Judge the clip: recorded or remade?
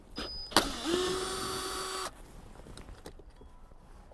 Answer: recorded